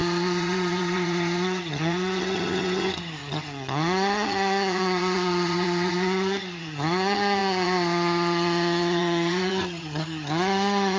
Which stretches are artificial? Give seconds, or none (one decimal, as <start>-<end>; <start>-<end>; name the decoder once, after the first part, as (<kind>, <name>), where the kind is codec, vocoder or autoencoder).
0.0-11.0 (vocoder, HiFi-GAN)